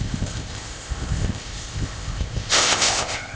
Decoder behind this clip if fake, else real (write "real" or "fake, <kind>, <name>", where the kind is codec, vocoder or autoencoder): fake, codec, ZipCodec